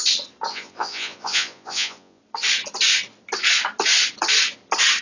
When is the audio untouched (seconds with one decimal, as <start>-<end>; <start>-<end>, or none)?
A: 0.0-0.5; 2.2-5.0